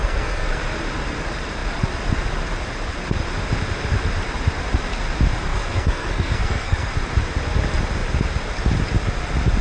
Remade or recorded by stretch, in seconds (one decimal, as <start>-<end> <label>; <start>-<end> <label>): 0.0-0.6 remade; 0.6-5.5 recorded; 5.5-6.9 remade; 6.9-9.6 recorded